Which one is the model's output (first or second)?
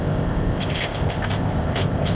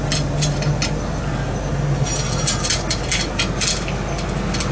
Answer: first